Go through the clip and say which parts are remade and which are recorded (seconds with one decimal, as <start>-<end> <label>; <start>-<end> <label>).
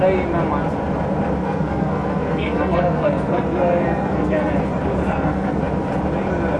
0.0-1.4 recorded; 1.4-4.5 remade; 4.5-5.0 recorded; 5.0-5.6 remade; 5.6-6.6 recorded